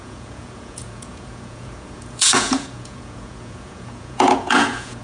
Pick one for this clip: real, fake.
fake